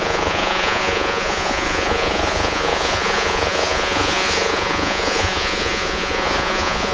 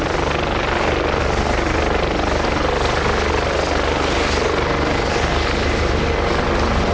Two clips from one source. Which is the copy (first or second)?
first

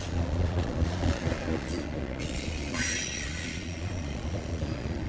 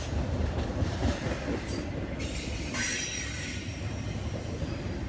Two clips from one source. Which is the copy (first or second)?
first